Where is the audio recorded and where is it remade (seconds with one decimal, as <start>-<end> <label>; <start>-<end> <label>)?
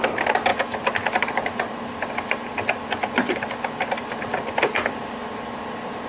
0.0-6.1 recorded